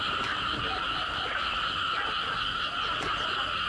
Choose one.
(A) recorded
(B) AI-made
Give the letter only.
A